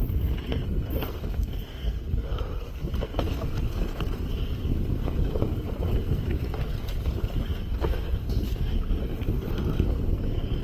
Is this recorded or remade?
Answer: remade